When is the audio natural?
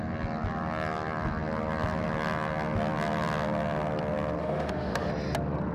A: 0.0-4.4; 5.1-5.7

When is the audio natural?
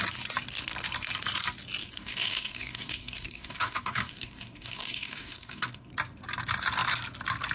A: 0.0-1.8; 5.9-7.5